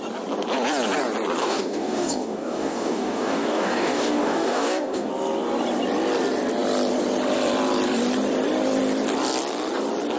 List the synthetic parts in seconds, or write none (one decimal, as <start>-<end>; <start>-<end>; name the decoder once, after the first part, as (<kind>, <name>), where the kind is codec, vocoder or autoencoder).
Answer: 1.4-5.1 (codec, DAC)